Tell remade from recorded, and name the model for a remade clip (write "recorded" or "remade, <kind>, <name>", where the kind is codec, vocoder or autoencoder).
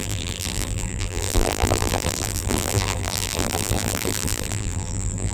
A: remade, vocoder, BigVGAN v2